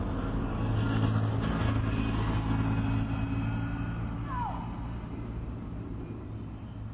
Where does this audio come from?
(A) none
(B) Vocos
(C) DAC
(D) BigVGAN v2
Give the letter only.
A